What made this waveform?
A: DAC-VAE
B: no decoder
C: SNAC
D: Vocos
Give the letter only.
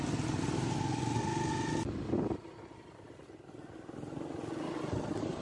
B